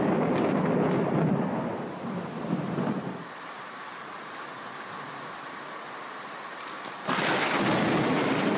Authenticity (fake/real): fake